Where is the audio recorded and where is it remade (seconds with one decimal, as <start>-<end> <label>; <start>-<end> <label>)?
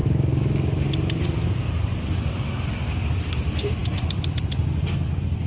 0.0-5.5 recorded